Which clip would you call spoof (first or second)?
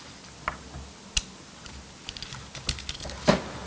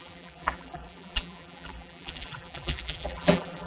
second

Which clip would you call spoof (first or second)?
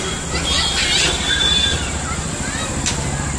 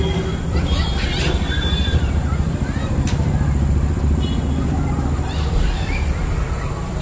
second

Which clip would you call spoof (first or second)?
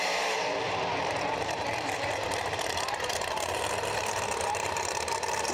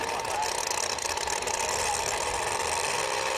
first